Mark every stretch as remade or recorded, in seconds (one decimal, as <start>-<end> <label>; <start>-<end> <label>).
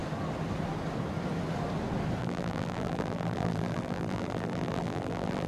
0.0-2.2 recorded; 2.2-5.5 remade